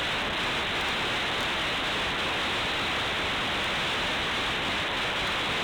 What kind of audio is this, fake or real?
real